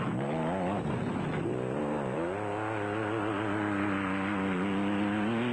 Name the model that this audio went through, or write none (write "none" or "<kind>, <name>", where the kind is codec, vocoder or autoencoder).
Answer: none